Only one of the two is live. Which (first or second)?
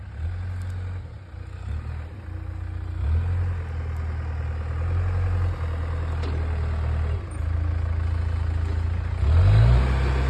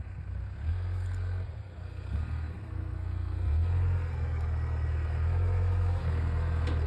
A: first